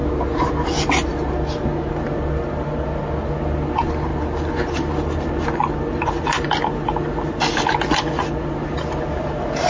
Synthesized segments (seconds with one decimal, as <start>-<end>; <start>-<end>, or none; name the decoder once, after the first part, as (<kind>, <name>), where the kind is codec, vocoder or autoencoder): none